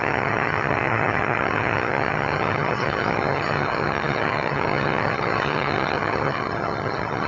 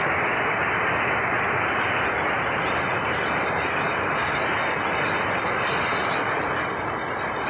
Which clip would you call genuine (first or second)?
second